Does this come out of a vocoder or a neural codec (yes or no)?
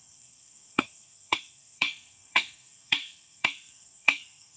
yes